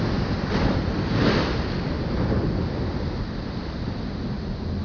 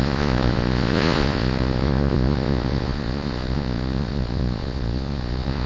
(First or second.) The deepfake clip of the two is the second